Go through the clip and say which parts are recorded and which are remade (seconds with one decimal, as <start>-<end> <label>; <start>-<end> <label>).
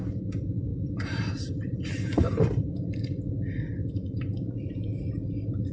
0.0-5.7 remade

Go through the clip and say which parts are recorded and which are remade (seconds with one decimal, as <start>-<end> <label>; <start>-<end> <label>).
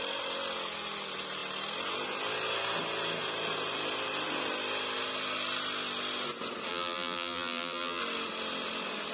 0.0-6.7 recorded; 6.7-8.0 remade; 8.0-9.1 recorded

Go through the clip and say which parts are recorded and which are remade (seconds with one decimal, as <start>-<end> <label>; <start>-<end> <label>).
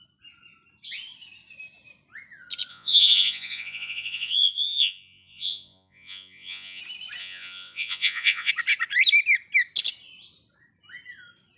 0.0-2.7 recorded; 2.7-6.8 remade; 6.8-7.2 recorded; 7.2-8.5 remade; 8.5-11.6 recorded